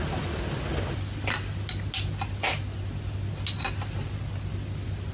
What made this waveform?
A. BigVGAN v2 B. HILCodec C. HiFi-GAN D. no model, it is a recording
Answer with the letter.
D